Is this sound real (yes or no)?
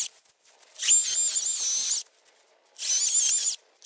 yes